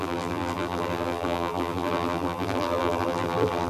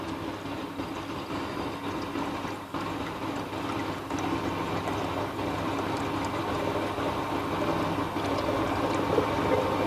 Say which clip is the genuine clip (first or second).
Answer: second